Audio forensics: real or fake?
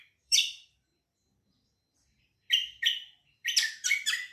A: fake